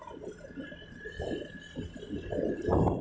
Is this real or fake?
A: real